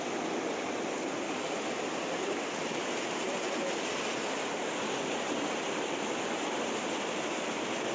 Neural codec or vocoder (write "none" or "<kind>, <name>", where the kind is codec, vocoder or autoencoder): none